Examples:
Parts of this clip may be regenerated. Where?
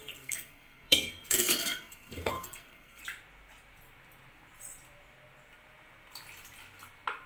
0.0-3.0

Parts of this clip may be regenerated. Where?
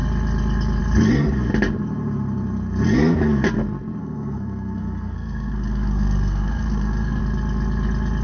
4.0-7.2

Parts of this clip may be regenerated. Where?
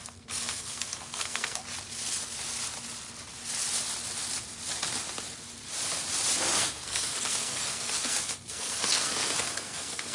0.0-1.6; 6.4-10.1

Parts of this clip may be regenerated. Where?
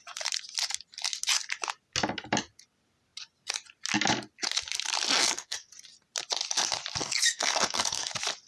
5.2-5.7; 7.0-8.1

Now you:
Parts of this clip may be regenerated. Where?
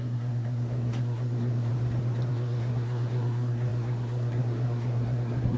0.0-1.7; 2.3-5.6